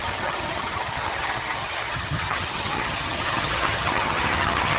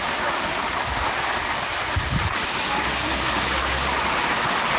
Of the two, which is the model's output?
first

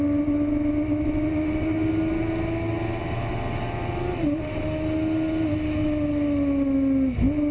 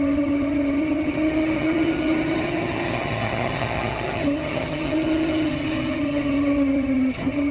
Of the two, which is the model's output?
second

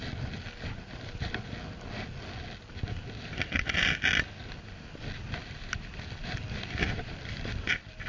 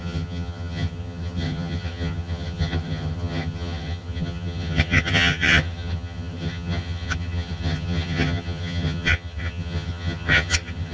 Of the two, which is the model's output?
second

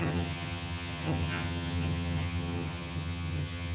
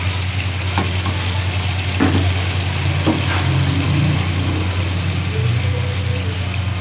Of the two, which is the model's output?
first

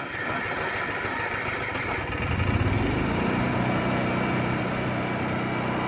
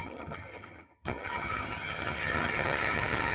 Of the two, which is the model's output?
second